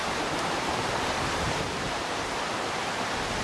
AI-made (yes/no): yes